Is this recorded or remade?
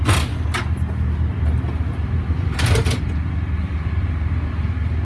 recorded